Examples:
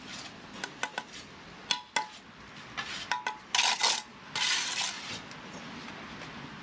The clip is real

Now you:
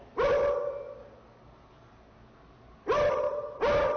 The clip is real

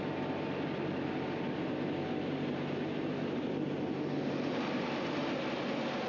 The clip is real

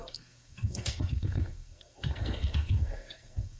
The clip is fake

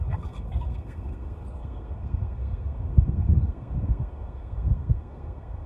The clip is fake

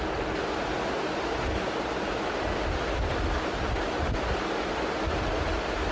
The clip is real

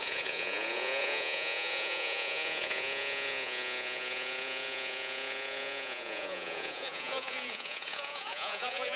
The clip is fake